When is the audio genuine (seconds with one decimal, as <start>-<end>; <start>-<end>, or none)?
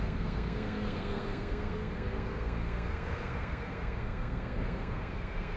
none